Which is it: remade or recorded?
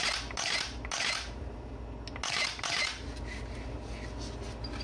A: recorded